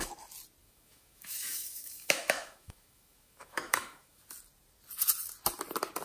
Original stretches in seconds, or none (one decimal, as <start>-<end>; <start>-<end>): 0.0-0.6; 4.2-6.0